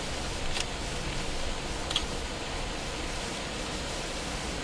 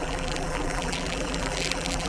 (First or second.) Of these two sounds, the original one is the first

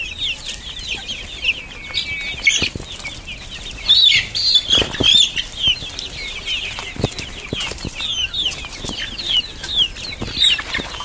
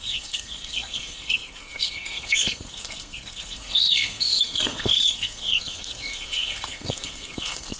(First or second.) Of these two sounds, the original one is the first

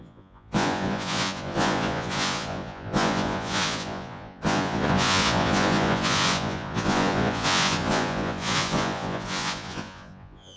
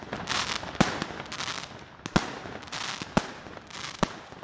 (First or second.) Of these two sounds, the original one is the second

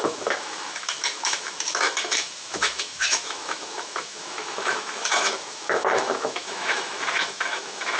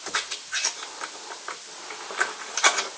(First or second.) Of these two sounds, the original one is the second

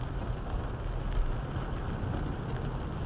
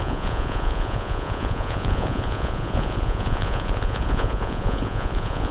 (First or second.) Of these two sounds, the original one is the first